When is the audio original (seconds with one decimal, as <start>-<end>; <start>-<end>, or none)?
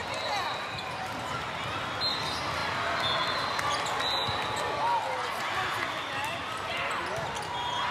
0.0-7.9